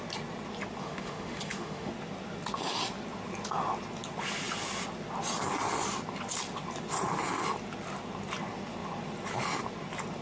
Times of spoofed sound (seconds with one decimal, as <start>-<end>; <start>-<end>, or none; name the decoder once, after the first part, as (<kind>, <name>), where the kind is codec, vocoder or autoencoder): 0.8-1.9 (autoencoder, DAC-VAE)